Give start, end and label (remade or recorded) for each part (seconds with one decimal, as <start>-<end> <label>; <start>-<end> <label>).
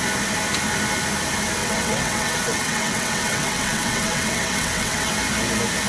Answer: 0.0-1.6 recorded; 1.6-5.1 remade; 5.1-5.9 recorded